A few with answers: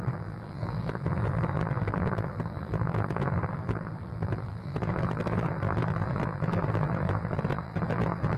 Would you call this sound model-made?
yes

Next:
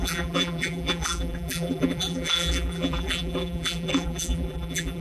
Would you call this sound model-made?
yes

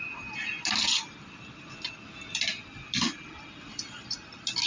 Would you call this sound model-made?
no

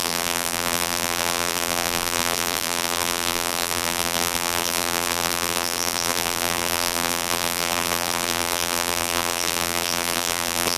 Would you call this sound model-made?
yes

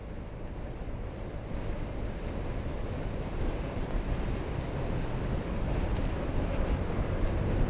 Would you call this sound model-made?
yes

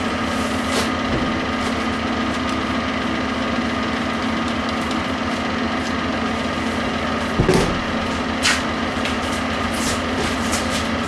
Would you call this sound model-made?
no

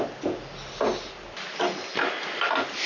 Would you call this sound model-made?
no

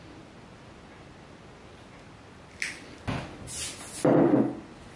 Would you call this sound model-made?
no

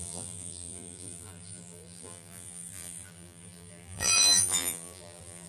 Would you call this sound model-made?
yes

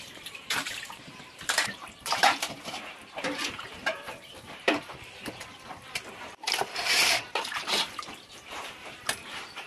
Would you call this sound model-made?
yes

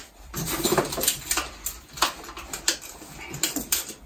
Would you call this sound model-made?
no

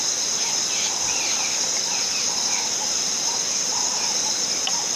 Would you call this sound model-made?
no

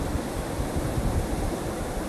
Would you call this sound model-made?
no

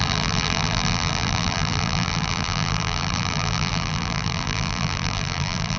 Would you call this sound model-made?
yes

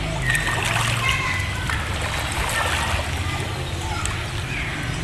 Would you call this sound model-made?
no